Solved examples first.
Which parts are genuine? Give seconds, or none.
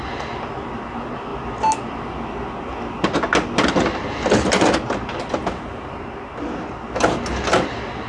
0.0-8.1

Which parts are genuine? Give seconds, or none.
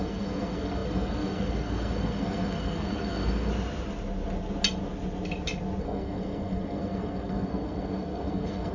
3.5-5.8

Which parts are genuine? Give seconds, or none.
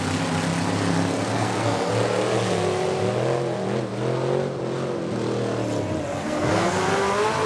0.0-1.3; 1.9-6.1; 6.8-7.5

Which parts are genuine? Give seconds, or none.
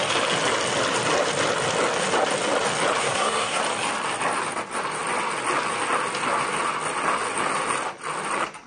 0.0-3.0; 3.6-8.7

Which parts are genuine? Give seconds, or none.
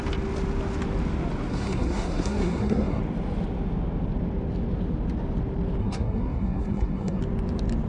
0.0-1.5; 3.0-5.8; 7.2-7.9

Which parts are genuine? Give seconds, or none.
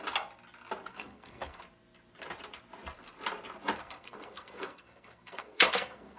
0.0-0.9; 1.6-3.8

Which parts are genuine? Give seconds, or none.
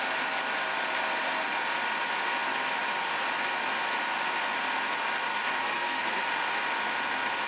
0.0-5.6; 6.2-7.5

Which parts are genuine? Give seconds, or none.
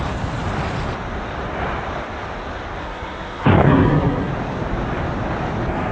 0.0-2.8; 4.3-5.9